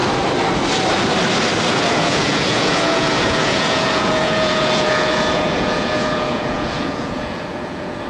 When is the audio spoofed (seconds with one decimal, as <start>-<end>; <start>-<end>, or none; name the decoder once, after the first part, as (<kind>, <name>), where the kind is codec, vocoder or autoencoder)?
1.7-8.1 (vocoder, Vocos)